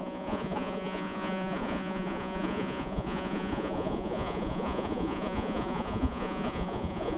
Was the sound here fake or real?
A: fake